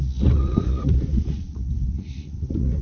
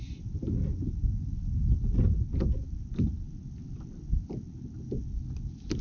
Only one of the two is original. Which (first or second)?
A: second